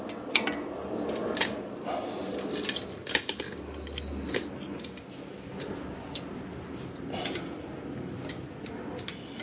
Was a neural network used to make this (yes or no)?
no